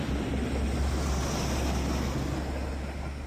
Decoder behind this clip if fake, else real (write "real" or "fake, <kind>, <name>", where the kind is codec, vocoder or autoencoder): real